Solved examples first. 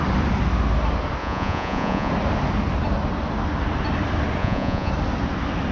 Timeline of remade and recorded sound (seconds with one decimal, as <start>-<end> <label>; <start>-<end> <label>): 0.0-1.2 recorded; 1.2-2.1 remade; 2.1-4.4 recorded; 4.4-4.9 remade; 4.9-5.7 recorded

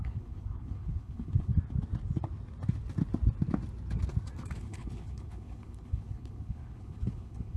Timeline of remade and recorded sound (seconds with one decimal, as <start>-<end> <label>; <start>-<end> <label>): 0.0-1.5 remade; 1.5-4.6 recorded; 4.6-7.6 remade

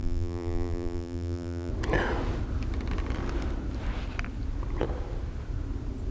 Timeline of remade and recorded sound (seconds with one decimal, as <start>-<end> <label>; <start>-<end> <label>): 0.0-1.7 remade; 1.7-6.1 recorded